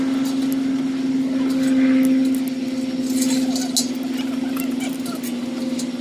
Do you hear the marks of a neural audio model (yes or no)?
no